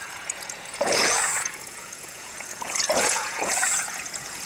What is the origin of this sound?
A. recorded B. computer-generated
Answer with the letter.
B